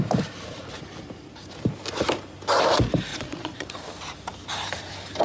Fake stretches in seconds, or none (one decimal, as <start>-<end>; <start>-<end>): 3.1-3.7